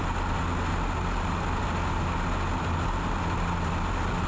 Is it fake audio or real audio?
real